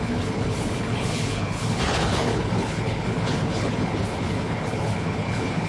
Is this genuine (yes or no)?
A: no